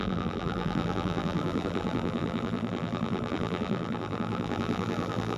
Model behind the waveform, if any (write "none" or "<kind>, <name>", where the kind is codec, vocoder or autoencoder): vocoder, BigVGAN v2